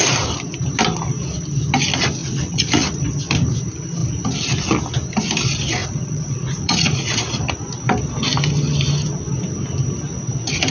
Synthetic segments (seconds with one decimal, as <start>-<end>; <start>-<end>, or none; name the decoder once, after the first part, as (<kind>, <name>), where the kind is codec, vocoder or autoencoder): 2.2-3.0 (vocoder, Vocos); 5.8-7.4